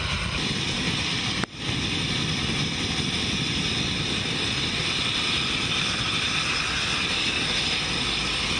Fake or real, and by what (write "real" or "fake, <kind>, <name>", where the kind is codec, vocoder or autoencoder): real